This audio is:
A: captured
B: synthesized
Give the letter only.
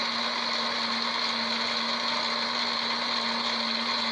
A